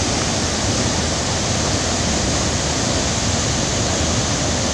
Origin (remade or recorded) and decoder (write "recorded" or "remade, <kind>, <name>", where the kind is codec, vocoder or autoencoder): recorded